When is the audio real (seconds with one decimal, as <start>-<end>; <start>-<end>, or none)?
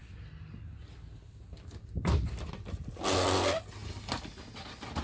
2.2-5.0